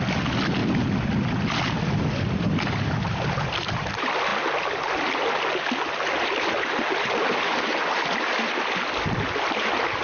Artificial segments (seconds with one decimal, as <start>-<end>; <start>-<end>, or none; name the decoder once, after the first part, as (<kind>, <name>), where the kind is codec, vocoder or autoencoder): none